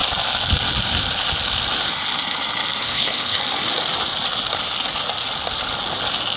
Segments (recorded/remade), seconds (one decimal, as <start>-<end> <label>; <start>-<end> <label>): 0.0-2.8 recorded; 2.8-3.4 remade; 3.4-6.4 recorded